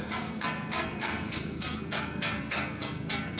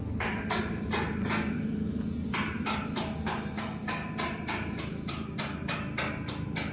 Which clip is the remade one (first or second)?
first